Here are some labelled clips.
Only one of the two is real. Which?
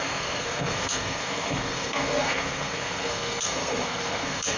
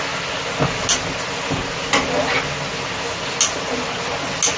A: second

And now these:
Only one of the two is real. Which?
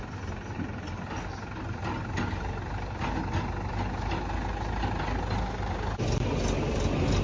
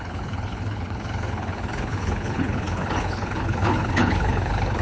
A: first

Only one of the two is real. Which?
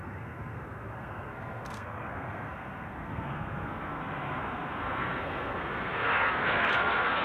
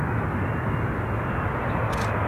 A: second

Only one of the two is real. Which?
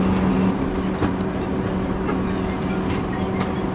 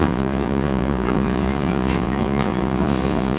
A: first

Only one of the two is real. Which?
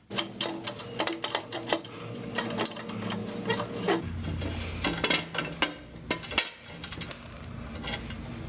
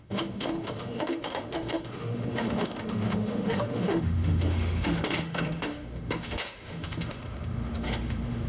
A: first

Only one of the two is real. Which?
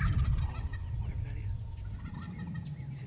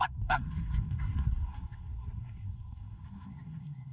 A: first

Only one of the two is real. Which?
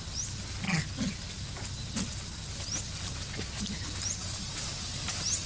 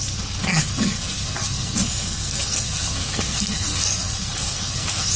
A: first